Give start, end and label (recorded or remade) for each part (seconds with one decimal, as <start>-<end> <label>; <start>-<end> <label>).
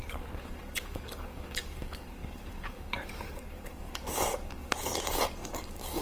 0.0-6.0 remade